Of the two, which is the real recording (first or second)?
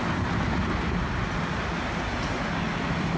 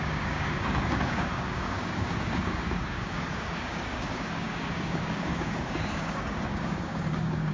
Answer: first